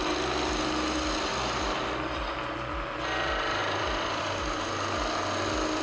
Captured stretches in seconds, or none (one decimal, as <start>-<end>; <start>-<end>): 0.0-3.6; 4.2-5.8